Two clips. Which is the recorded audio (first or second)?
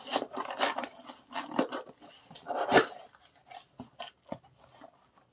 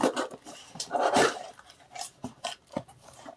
first